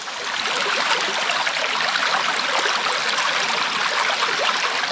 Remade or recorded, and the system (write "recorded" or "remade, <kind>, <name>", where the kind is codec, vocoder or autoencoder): recorded